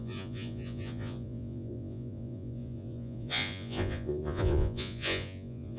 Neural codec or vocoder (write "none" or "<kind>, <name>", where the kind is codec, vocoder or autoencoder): vocoder, Vocos